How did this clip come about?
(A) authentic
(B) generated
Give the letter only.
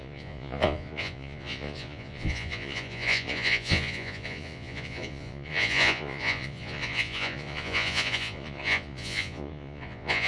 B